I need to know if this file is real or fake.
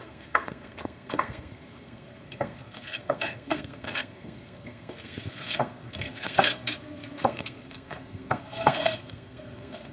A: fake